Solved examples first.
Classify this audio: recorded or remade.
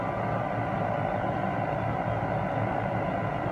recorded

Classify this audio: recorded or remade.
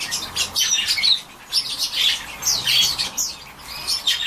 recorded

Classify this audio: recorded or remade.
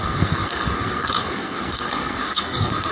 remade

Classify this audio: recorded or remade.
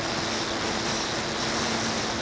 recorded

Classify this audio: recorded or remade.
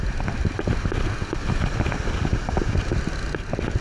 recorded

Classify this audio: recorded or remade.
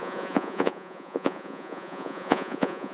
remade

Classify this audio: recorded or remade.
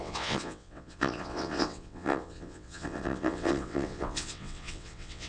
remade